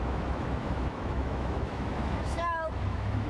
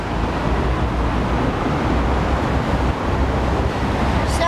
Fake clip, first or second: first